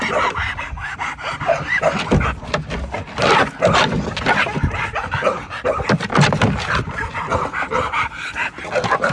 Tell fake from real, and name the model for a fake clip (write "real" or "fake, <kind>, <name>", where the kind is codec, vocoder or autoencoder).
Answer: real